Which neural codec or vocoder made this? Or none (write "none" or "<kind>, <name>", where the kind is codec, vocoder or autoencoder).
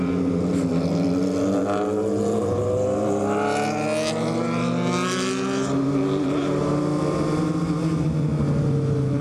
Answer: none